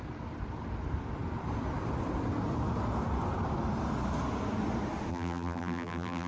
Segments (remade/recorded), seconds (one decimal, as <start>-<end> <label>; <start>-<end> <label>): 0.0-5.1 recorded; 5.1-6.3 remade